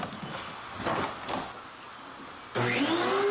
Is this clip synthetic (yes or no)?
no